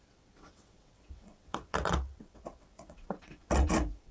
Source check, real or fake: fake